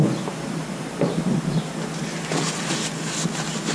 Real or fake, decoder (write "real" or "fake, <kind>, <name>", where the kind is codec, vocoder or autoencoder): real